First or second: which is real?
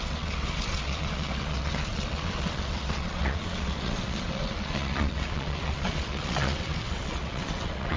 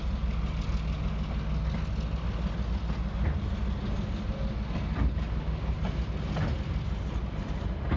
second